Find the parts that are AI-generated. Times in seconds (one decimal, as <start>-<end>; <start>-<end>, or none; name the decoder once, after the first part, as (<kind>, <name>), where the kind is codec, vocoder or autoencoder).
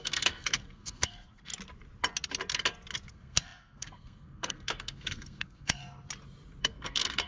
0.0-1.5 (codec, SNAC); 3.1-5.8; 6.6-7.3